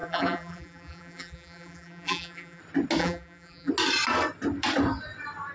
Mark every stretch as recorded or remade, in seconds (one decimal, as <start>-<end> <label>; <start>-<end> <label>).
0.0-2.6 remade; 2.6-3.0 recorded; 3.0-3.7 remade; 3.7-5.5 recorded